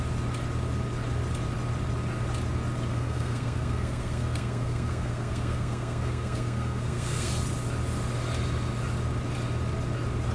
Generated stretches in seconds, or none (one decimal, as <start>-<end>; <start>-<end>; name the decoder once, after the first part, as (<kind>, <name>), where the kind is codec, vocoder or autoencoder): 2.9-7.3 (codec, SNAC)